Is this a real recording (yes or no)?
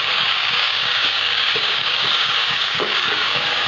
no